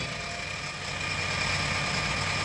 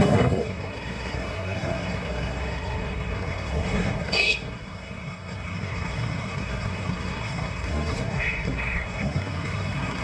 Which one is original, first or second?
first